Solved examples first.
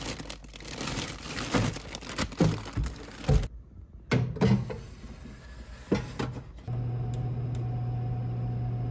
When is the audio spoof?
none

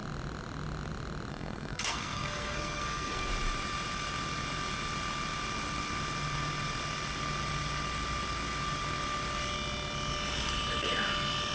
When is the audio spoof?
1.3-3.3

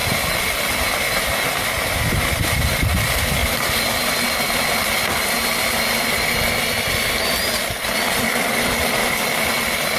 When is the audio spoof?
none

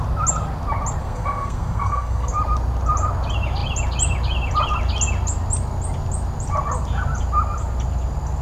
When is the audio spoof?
1.0-2.3